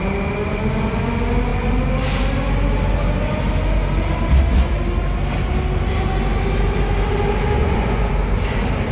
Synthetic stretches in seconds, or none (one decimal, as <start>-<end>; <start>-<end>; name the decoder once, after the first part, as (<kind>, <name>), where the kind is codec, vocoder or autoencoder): 7.6-8.1 (vocoder, Vocos)